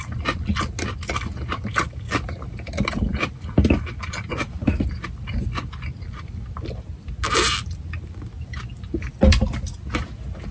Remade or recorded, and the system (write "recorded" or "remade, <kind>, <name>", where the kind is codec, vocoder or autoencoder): recorded